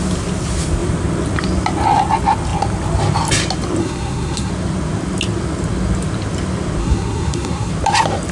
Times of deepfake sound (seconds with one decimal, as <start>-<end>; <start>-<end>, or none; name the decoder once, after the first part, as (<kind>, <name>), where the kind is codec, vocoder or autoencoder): 3.8-4.5 (codec, SNAC); 6.8-7.7